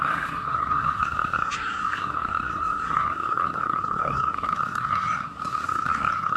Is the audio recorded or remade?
remade